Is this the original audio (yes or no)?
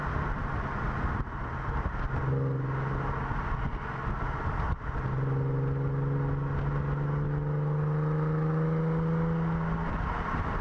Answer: yes